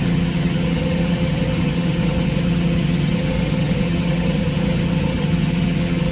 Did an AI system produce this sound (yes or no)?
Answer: yes